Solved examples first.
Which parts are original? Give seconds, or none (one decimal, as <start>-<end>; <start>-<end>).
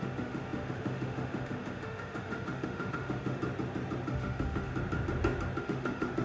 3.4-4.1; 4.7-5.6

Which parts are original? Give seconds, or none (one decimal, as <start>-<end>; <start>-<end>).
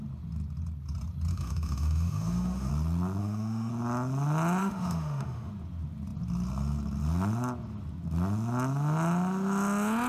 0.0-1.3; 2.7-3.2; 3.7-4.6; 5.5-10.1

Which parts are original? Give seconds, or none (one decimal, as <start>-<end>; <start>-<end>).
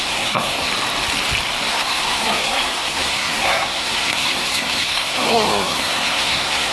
0.7-1.7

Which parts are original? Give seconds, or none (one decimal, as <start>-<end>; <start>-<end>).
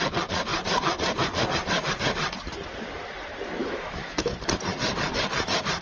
0.0-3.6; 4.3-5.8